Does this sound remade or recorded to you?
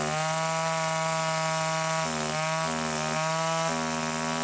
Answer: recorded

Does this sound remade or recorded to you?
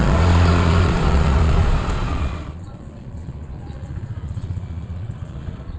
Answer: remade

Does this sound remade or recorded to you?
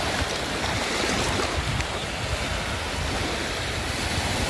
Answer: recorded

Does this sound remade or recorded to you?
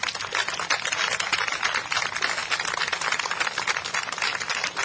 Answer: recorded